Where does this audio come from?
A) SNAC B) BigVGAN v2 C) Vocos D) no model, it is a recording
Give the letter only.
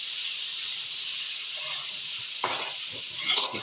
C